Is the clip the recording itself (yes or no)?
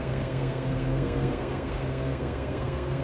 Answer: no